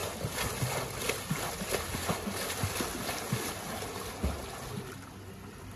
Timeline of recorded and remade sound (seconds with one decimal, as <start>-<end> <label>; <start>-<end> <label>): 0.0-5.8 recorded